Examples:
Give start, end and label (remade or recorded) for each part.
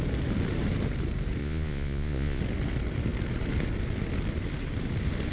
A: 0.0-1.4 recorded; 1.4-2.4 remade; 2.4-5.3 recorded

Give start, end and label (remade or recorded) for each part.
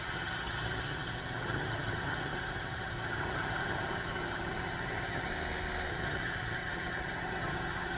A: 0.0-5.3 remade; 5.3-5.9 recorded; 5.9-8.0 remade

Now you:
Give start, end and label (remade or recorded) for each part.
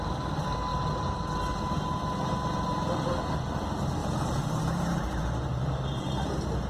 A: 0.0-0.7 recorded; 0.7-3.2 remade; 3.2-4.0 recorded; 4.0-6.3 remade; 6.3-6.7 recorded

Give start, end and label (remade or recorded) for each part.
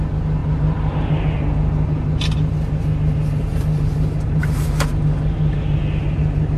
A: 0.0-6.6 recorded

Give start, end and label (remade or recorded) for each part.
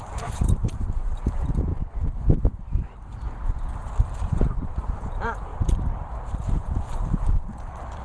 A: 0.0-1.7 remade; 1.7-4.9 recorded; 4.9-8.0 remade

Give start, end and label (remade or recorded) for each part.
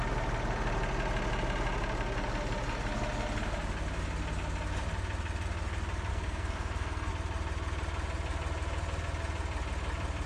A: 0.0-6.1 recorded; 6.1-7.1 remade; 7.1-10.3 recorded